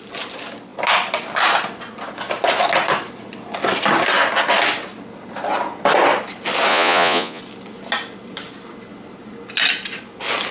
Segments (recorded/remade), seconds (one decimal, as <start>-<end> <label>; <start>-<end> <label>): 0.0-6.7 recorded; 6.7-7.4 remade; 7.4-10.5 recorded